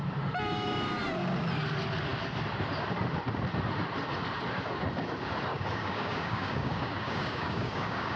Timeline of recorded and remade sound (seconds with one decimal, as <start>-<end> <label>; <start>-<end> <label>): 0.0-5.5 recorded; 5.5-8.2 remade